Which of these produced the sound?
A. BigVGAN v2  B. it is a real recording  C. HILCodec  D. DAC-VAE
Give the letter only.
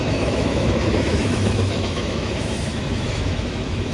D